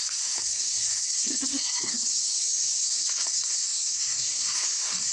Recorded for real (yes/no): no